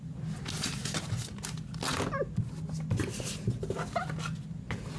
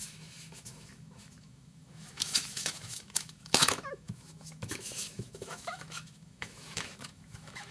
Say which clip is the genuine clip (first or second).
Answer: first